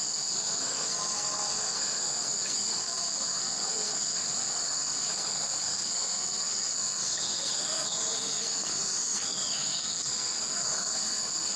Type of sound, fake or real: fake